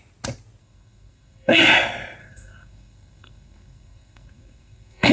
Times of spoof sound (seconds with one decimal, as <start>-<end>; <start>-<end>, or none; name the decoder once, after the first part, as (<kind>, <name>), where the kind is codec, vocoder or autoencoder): 0.6-1.6 (codec, SNAC); 2.2-5.1